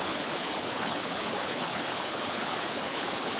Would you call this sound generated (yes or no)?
yes